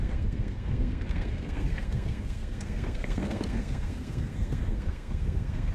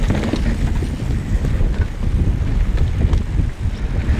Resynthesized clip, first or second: first